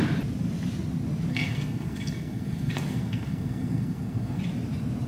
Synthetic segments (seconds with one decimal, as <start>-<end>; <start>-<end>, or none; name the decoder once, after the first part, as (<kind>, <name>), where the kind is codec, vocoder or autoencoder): 1.3-4.4 (codec, SNAC)